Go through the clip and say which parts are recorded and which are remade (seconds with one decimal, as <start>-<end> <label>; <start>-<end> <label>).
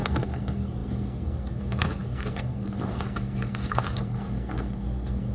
0.0-5.3 remade